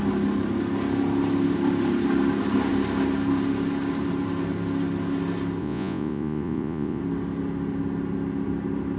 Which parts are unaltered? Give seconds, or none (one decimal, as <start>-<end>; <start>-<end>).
0.0-5.6; 7.0-9.0